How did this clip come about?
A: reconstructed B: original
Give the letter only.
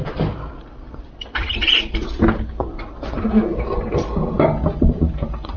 B